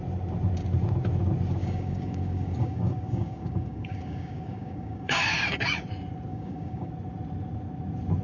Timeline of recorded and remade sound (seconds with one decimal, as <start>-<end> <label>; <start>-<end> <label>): 0.0-1.6 recorded; 1.6-5.6 remade; 5.6-6.3 recorded; 6.3-6.9 remade; 6.9-8.2 recorded